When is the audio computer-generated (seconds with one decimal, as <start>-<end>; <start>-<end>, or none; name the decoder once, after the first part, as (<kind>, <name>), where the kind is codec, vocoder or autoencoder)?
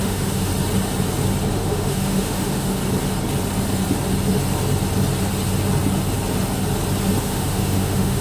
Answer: 0.0-0.5 (autoencoder, DAC-VAE); 1.5-2.8; 7.2-8.2